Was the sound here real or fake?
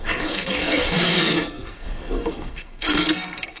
fake